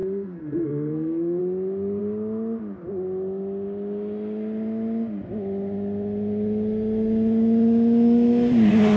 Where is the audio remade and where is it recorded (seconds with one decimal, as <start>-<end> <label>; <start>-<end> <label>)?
0.0-1.4 remade; 1.4-9.0 recorded

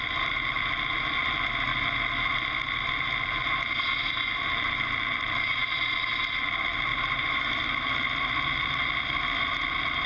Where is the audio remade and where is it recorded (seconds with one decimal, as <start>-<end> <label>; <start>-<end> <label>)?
0.0-6.9 recorded; 6.9-7.6 remade; 7.6-10.1 recorded

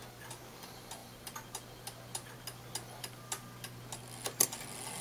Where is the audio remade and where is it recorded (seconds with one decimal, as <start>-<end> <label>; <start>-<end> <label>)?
0.0-5.0 recorded

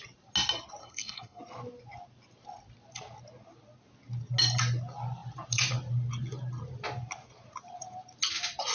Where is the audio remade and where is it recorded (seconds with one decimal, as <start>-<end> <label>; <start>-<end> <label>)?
0.0-0.8 recorded; 0.8-1.4 remade; 1.4-8.7 recorded

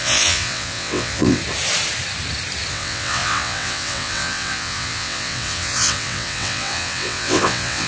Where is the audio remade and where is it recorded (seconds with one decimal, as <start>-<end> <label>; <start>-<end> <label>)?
0.0-1.4 remade; 1.4-2.7 recorded; 2.7-7.9 remade

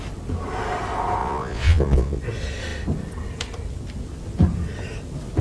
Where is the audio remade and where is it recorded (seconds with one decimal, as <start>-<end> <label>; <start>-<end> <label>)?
0.0-1.2 recorded; 1.2-2.2 remade; 2.2-5.4 recorded